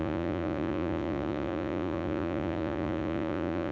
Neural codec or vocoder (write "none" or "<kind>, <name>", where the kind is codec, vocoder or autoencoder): vocoder, Vocos